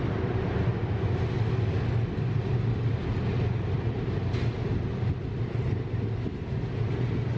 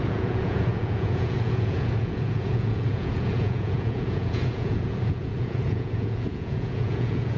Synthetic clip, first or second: second